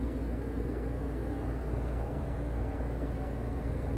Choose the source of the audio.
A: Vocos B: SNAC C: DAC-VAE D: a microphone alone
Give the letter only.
B